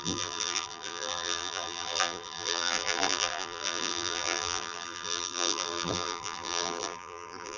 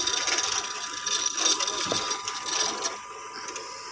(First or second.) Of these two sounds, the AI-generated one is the first